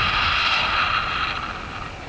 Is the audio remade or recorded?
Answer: recorded